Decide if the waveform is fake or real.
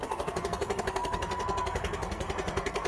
fake